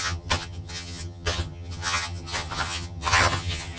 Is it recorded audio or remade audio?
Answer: remade